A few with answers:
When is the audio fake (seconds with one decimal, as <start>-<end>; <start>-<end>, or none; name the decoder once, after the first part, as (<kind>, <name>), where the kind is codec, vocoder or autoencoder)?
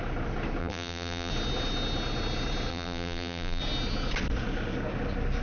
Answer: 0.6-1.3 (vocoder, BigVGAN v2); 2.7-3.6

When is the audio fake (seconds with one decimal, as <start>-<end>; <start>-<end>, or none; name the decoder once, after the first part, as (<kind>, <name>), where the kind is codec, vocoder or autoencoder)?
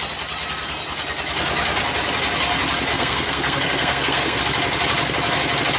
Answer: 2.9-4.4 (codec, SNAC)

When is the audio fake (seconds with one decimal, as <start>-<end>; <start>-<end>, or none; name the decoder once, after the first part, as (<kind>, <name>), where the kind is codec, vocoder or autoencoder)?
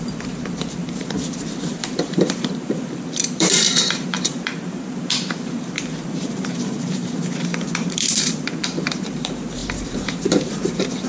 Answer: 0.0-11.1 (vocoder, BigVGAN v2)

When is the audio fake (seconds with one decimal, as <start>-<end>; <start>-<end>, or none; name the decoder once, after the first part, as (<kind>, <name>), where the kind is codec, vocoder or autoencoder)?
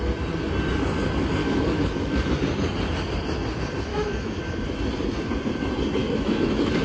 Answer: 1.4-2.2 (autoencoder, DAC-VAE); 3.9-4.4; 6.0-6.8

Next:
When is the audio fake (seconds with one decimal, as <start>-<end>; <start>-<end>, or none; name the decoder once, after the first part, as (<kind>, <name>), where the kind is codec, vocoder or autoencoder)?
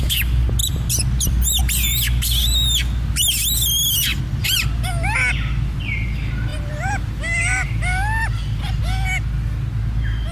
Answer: 0.6-1.6 (vocoder, BigVGAN v2); 4.1-4.9; 6.5-8.8